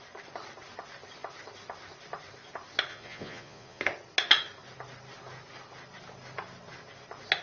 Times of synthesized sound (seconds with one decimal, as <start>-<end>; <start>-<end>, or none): 2.9-3.8